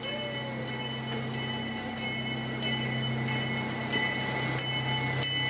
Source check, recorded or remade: recorded